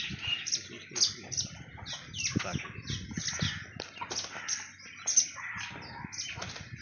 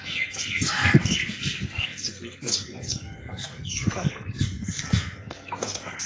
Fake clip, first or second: second